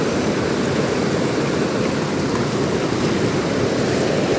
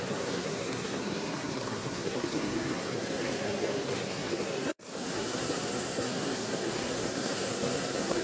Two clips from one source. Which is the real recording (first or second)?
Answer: first